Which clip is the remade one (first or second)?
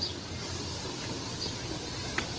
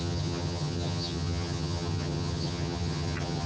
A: second